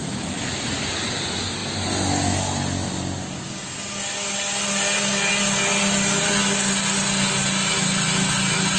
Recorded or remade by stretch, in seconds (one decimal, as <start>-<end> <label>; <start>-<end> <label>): 0.0-8.8 recorded